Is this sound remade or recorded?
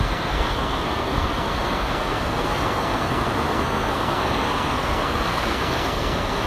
remade